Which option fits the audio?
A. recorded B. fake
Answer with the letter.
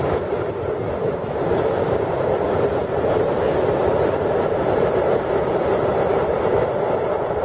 B